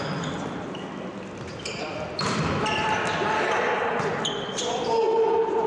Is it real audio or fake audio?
real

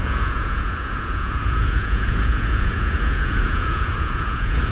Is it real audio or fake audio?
fake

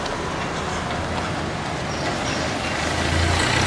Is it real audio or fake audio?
real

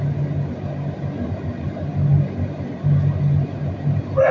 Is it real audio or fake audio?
real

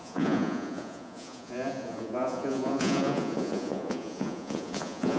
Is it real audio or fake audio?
fake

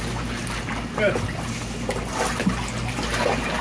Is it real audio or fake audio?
real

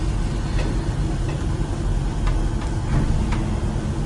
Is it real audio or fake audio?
real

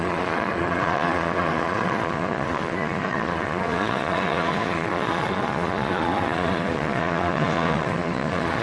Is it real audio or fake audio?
fake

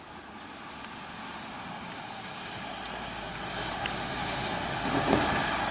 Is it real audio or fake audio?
real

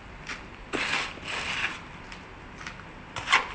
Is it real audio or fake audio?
real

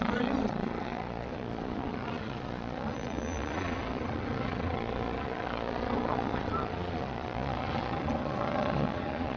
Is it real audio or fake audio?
fake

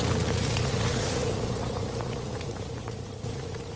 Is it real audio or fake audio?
fake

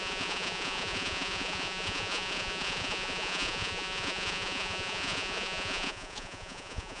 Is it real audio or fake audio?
fake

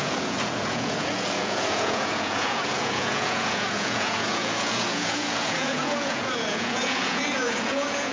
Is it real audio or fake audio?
fake